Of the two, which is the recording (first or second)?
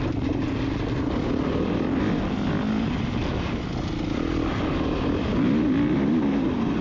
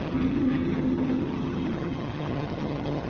first